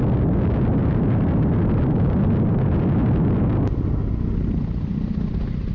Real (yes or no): yes